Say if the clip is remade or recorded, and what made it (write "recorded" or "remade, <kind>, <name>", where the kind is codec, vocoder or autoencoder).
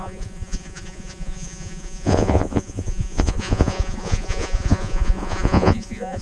remade, vocoder, Vocos